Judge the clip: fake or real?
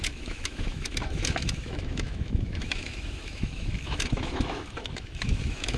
fake